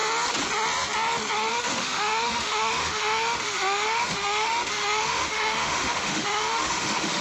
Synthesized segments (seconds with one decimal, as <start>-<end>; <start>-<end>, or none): 1.5-7.2